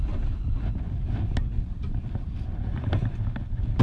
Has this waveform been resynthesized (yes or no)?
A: no